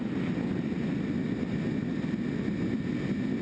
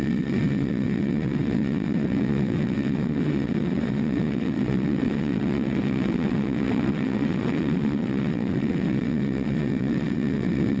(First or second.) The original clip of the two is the first